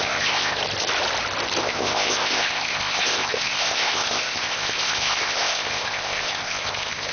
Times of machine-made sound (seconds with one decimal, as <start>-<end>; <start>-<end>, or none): 0.0-0.6; 1.6-7.1